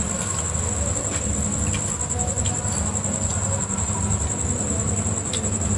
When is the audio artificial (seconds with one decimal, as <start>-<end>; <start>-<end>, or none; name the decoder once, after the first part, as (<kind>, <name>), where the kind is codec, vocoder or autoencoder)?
none